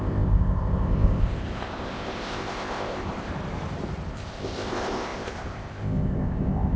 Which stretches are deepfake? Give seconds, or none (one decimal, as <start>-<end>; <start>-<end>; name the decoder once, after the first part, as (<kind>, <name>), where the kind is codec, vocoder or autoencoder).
0.0-3.3 (codec, ZipCodec); 4.1-6.8